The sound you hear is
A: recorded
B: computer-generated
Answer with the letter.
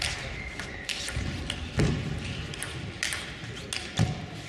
A